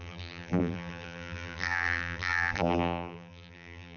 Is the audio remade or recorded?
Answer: remade